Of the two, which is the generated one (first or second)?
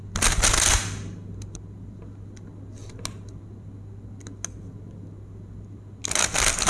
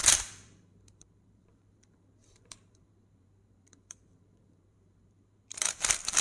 second